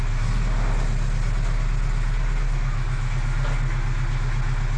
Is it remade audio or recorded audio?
recorded